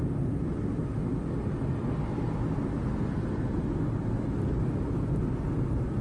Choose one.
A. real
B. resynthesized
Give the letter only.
A